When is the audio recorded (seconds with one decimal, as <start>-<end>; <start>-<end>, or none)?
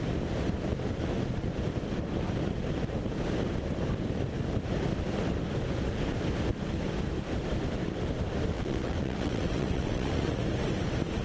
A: 0.0-8.5; 10.4-11.2